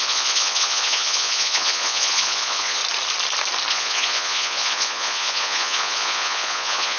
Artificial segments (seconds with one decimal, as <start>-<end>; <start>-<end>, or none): 0.0-2.8; 3.7-7.0